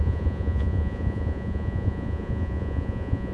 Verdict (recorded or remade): remade